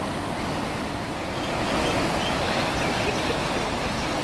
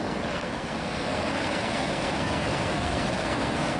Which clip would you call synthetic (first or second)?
second